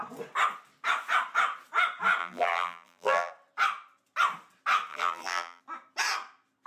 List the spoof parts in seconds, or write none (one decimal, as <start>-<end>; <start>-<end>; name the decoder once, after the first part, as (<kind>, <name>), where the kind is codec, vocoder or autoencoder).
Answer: 2.2-3.3 (vocoder, BigVGAN v2); 4.9-5.6